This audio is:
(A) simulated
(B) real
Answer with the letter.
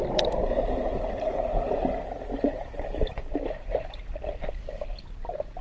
B